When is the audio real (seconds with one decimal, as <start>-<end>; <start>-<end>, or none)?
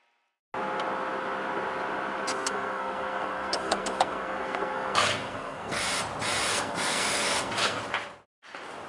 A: 0.0-2.3; 5.8-6.5; 7.8-8.9